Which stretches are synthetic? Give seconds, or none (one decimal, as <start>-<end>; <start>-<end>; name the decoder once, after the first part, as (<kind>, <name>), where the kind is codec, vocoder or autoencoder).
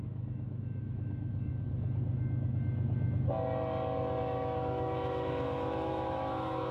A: 0.0-1.5 (autoencoder, DAC-VAE); 4.2-6.7